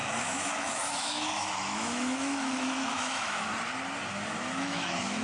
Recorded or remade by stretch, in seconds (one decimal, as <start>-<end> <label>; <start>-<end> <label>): 0.0-3.5 remade; 3.5-4.4 recorded; 4.4-5.2 remade